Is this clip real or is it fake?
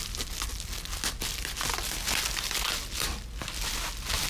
real